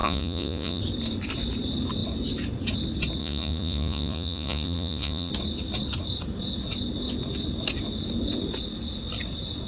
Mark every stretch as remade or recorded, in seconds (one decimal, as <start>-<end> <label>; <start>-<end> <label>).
0.0-0.8 remade; 0.8-3.2 recorded; 3.2-5.3 remade; 5.3-9.7 recorded